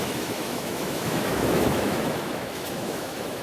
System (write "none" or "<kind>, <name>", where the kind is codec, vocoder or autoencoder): autoencoder, DAC-VAE